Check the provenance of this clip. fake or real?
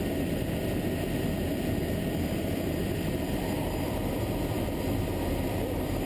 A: fake